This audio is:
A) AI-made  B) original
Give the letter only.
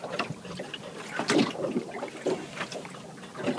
B